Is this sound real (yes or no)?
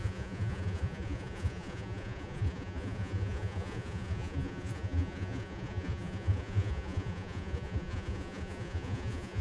no